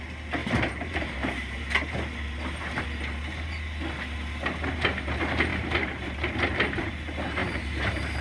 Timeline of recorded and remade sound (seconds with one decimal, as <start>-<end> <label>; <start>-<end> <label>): 0.0-0.4 recorded; 0.4-1.6 remade; 1.6-5.5 recorded; 5.5-6.1 remade; 6.1-7.4 recorded; 7.4-8.2 remade